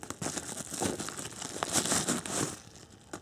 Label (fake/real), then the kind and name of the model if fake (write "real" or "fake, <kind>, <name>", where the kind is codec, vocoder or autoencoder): real